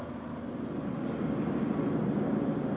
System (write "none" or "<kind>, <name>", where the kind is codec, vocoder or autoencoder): none